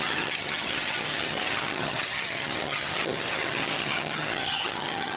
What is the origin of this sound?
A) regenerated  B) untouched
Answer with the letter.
A